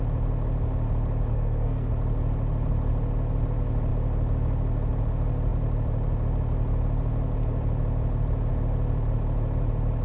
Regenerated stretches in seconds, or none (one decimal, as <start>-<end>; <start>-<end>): 1.3-1.9